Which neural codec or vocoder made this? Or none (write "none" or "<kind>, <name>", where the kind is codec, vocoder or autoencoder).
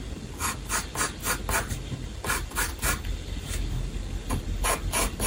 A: none